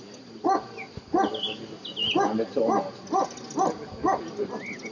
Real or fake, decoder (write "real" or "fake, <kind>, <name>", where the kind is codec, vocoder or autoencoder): real